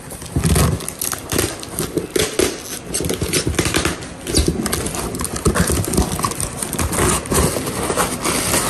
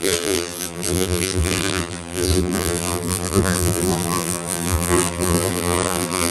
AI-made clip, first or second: second